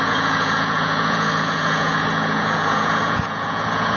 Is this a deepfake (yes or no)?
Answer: yes